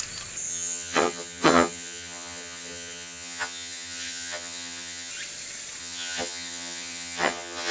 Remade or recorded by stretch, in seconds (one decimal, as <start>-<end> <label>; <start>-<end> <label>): 0.0-0.5 recorded; 0.5-5.1 remade; 5.1-5.8 recorded; 5.8-7.7 remade